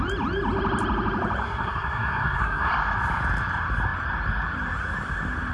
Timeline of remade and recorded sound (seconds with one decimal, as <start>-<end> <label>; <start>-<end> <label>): 0.0-1.4 recorded; 1.4-2.7 remade; 2.7-5.5 recorded